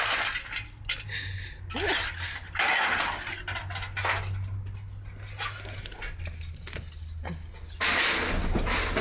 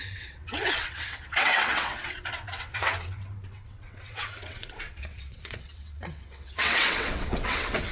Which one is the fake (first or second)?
second